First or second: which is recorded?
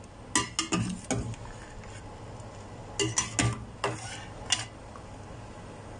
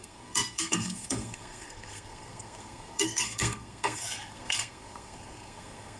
first